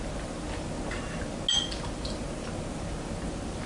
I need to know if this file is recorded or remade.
recorded